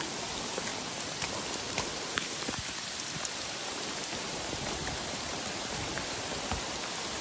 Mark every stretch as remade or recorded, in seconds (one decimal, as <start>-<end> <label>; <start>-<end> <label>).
0.0-0.7 remade; 0.7-1.2 recorded; 1.2-7.2 remade

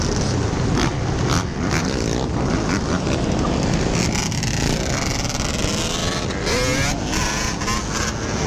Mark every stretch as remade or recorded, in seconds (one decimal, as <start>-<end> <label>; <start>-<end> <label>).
0.0-0.9 recorded; 0.9-1.8 remade; 1.8-8.5 recorded

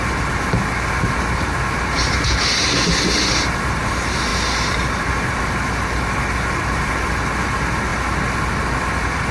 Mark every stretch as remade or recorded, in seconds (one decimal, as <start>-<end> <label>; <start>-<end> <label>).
0.0-9.3 recorded

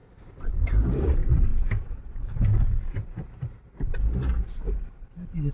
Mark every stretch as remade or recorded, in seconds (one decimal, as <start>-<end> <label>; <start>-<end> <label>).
0.0-0.5 recorded; 0.5-1.5 remade; 1.5-4.6 recorded; 4.6-5.5 remade